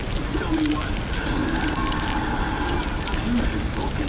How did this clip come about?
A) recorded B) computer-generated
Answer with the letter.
A